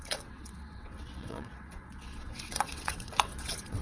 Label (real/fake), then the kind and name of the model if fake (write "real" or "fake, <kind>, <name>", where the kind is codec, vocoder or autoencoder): fake, vocoder, WaveNeXt